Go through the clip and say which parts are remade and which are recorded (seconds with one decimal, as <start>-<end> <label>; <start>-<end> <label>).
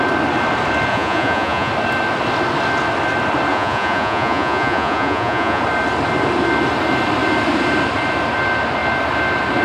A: 0.0-0.9 recorded; 0.9-1.7 remade; 1.7-3.5 recorded; 3.5-5.6 remade; 5.6-9.6 recorded